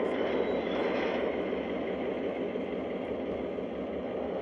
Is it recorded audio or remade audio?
recorded